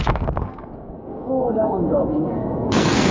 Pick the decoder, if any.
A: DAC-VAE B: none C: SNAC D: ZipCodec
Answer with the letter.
C